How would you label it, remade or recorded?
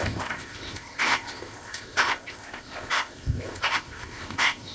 remade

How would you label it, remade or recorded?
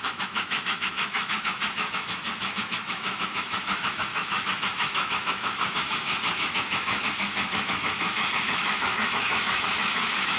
remade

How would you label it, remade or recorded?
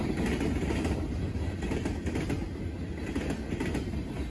recorded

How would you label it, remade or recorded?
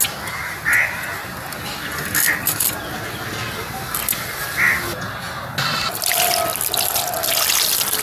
recorded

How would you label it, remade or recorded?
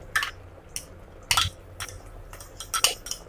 recorded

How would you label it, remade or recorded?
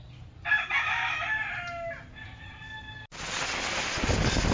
recorded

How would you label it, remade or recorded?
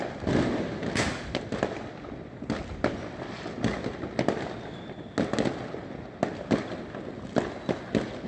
recorded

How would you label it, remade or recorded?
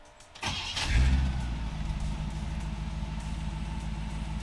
recorded